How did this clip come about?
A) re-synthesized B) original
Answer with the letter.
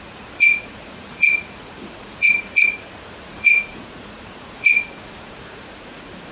A